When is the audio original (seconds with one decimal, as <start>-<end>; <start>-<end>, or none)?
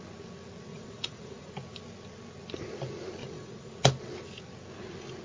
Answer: 0.0-0.7; 1.5-3.2; 3.7-5.2